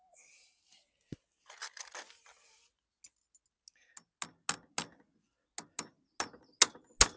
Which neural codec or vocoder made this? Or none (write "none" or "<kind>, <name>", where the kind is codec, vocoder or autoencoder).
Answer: none